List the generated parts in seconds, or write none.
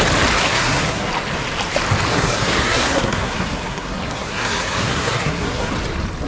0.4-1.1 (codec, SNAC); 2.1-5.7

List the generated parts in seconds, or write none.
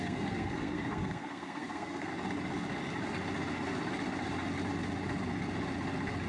0.0-2.1 (codec, SNAC)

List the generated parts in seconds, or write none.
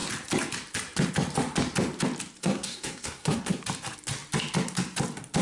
2.4-3.6 (codec, SNAC)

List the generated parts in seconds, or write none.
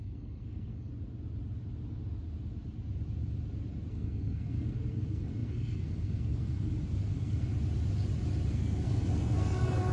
0.0-0.9 (codec, SNAC); 3.9-7.5; 8.5-9.9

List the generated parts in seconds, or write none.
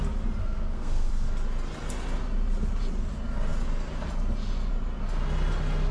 0.4-1.1 (codec, SNAC)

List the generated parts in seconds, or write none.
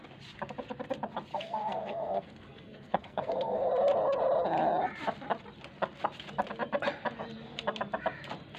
1.3-3.7 (codec, SNAC)